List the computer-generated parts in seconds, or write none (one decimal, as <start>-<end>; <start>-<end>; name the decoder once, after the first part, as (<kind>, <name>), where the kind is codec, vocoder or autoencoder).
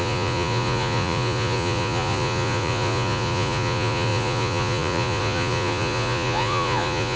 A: 0.0-7.2 (vocoder, Vocos)